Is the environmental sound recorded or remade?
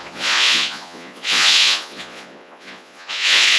remade